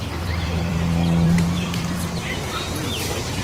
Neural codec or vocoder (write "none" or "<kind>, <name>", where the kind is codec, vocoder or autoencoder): vocoder, BigVGAN v2